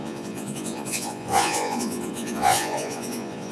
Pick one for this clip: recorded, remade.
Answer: remade